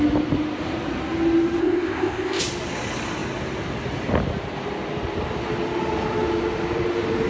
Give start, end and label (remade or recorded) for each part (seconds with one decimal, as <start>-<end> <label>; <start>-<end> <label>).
0.0-1.6 recorded; 1.6-2.4 remade; 2.4-7.3 recorded